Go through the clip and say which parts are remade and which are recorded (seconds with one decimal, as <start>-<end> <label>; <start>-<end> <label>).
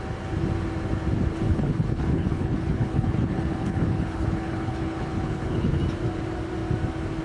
0.0-1.5 recorded; 1.5-5.8 remade; 5.8-7.2 recorded